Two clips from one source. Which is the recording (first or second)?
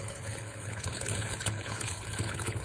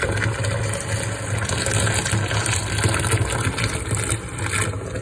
second